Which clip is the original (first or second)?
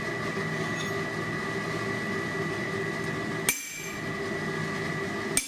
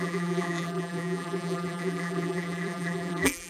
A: first